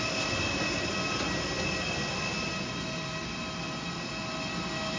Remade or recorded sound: recorded